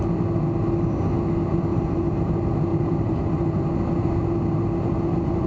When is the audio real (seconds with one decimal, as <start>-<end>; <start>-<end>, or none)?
0.0-1.7; 2.3-2.7; 3.6-5.5